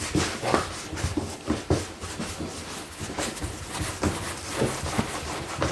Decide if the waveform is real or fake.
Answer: fake